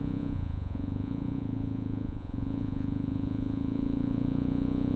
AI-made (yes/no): yes